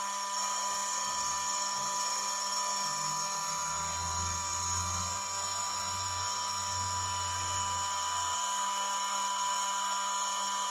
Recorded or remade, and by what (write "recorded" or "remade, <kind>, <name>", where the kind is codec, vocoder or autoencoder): remade, codec, SNAC